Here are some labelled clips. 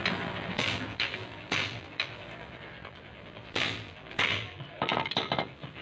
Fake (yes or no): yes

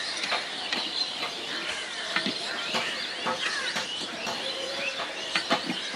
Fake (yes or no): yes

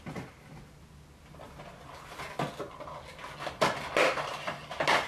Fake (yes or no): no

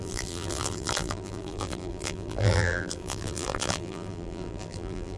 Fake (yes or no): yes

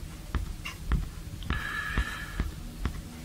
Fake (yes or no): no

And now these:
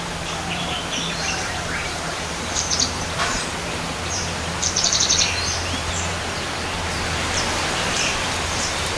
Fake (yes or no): yes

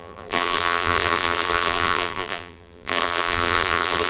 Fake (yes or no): yes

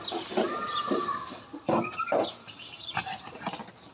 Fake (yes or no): yes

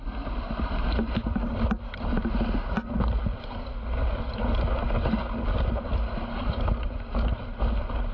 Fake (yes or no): no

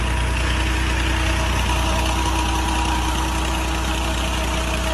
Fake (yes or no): no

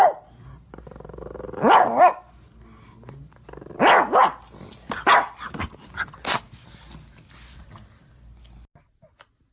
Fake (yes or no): no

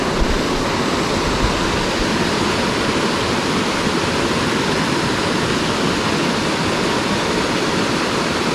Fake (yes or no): no